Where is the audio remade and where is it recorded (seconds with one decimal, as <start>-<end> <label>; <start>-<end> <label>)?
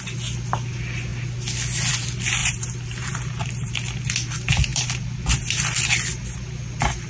0.0-2.4 recorded; 2.4-3.7 remade; 3.7-4.7 recorded; 4.7-5.9 remade; 5.9-7.1 recorded